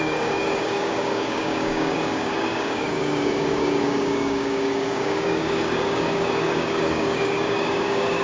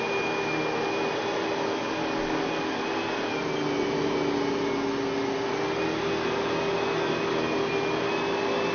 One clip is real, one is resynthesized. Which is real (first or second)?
second